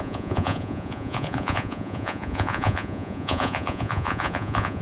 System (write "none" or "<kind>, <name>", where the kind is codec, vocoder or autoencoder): vocoder, Vocos